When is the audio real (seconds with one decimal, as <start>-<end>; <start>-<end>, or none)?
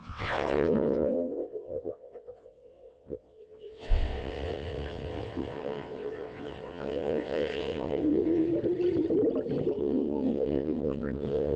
8.5-9.8